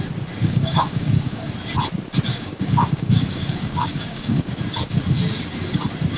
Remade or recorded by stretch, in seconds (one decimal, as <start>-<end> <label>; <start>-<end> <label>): 0.0-0.4 recorded; 0.4-1.5 remade; 1.5-2.3 recorded; 2.3-4.5 remade; 4.5-6.2 recorded